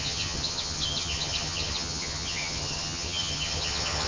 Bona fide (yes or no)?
no